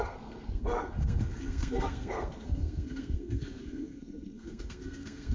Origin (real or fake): fake